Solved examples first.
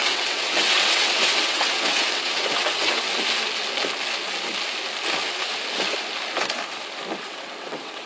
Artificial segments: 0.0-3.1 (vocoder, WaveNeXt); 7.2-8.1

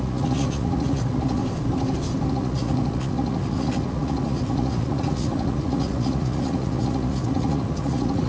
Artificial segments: 0.0-1.4 (vocoder, Vocos); 2.3-8.3

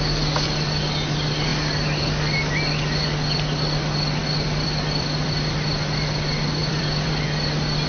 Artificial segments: 4.2-5.7 (vocoder, BigVGAN v2); 6.6-7.1